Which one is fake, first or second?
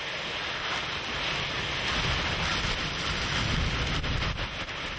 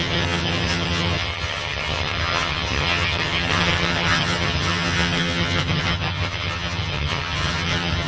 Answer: second